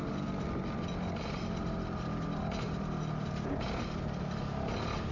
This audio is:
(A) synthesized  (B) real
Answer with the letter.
B